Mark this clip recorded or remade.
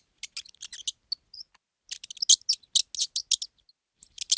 recorded